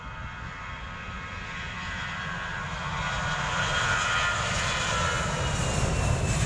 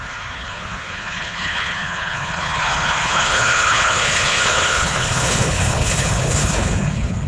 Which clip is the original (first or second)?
first